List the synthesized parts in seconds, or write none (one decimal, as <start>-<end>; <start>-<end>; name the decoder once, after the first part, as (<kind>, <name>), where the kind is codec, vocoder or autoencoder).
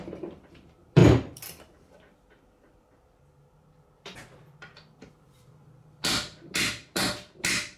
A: 0.0-7.8 (vocoder, BigVGAN v2)